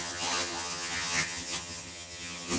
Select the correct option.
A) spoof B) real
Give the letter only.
A